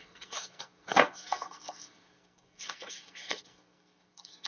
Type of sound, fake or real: fake